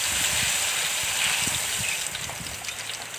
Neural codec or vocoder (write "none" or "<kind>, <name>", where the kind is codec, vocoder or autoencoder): none